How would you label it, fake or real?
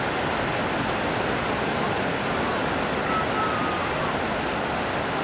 real